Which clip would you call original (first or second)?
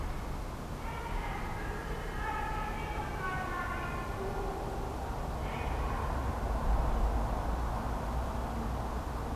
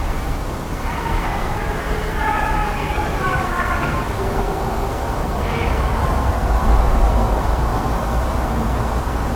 first